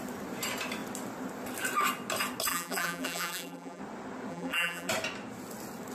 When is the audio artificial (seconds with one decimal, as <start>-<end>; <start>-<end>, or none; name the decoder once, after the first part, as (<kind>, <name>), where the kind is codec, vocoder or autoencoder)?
2.5-3.8 (vocoder, BigVGAN v2); 4.3-4.9